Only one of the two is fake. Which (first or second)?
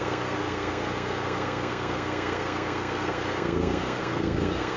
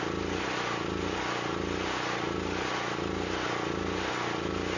first